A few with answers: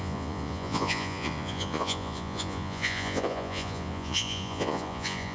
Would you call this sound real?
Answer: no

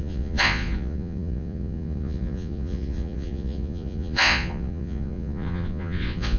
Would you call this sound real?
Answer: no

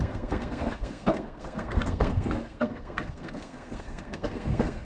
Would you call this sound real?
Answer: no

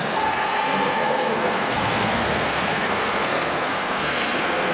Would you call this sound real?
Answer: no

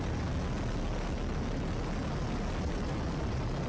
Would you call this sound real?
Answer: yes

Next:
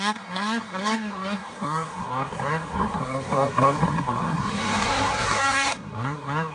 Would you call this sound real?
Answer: no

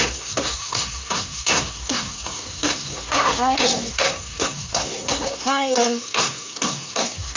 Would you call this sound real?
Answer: no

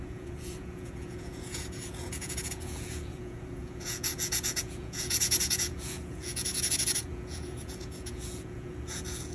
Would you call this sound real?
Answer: no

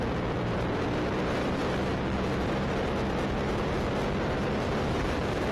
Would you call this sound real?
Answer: no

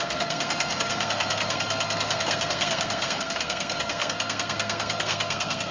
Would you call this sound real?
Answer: no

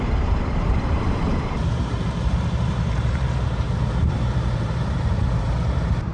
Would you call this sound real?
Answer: no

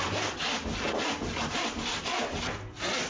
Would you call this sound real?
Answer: yes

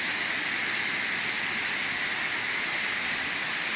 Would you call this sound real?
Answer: yes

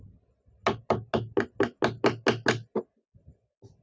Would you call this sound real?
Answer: yes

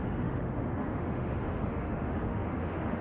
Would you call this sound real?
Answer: no